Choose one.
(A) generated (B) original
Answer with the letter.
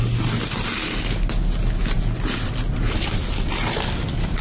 B